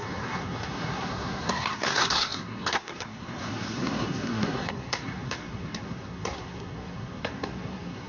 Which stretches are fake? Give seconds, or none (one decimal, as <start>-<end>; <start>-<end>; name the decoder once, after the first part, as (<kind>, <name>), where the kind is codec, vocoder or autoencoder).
0.0-8.1 (codec, SNAC)